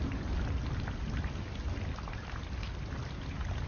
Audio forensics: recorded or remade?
recorded